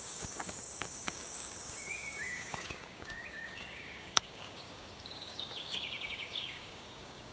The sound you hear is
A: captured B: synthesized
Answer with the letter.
B